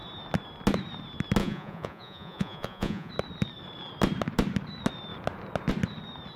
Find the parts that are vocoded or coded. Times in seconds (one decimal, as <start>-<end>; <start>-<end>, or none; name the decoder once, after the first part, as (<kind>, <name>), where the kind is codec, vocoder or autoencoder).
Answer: 1.4-3.1 (vocoder, Vocos)